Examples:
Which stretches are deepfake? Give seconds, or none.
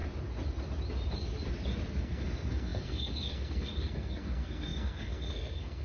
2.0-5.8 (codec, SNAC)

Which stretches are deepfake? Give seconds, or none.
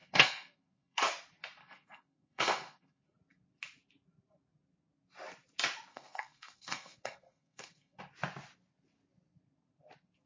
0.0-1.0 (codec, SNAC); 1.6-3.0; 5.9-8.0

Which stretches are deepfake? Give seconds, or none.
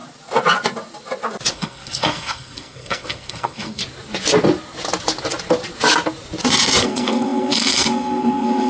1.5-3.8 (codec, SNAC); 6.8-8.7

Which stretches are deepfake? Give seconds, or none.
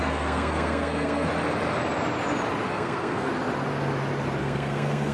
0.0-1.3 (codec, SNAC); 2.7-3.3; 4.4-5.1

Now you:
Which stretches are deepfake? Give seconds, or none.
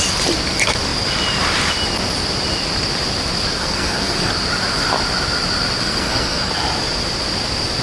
3.6-4.3 (codec, SNAC); 5.8-6.5